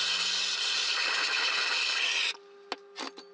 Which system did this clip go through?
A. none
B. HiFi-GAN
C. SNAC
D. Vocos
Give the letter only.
A